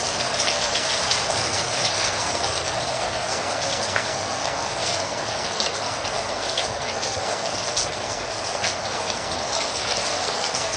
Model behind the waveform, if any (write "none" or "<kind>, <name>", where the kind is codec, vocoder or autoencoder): codec, SNAC